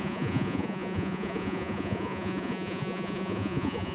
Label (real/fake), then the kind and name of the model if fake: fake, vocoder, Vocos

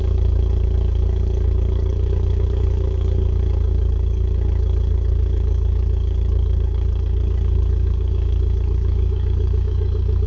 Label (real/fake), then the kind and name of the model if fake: fake, codec, DAC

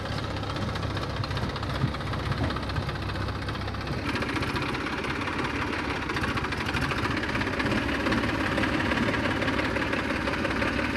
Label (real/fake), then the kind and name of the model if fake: real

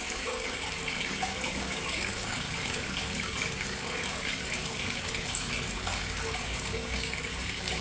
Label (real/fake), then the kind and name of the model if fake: fake, codec, DAC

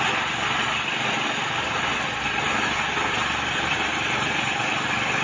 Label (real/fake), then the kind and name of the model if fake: real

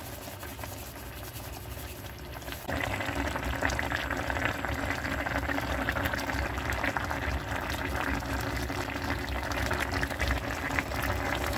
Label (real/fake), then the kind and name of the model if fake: real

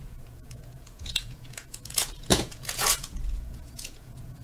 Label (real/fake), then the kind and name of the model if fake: fake, vocoder, Vocos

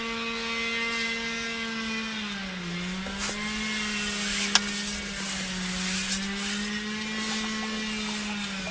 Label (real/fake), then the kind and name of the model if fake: real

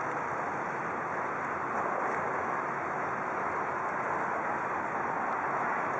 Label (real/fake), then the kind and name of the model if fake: real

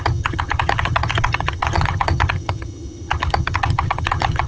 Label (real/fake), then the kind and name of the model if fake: fake, vocoder, HiFi-GAN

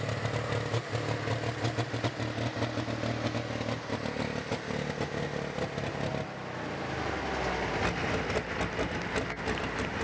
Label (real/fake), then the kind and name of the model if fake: real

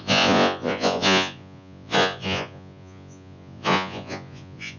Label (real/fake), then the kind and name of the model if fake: fake, vocoder, Vocos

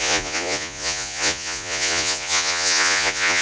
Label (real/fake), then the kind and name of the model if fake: fake, vocoder, Vocos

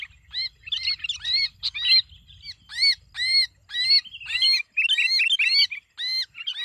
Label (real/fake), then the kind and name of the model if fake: real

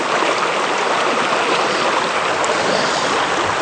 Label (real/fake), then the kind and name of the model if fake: real